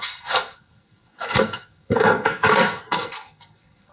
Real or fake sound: fake